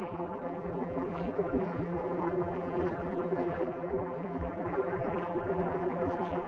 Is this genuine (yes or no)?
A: no